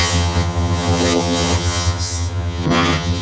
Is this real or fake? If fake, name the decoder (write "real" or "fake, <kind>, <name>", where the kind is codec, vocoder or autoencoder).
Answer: fake, vocoder, HiFi-GAN